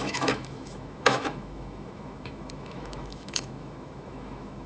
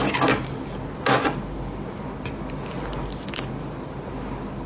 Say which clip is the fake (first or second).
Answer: first